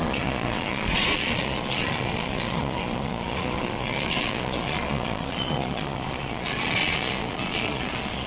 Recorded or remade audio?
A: remade